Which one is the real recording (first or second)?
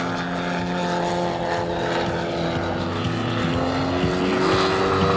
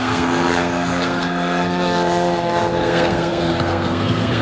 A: first